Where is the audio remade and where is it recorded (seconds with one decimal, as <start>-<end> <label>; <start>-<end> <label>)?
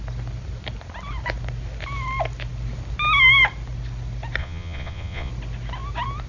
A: 0.0-4.4 recorded; 4.4-5.3 remade; 5.3-6.3 recorded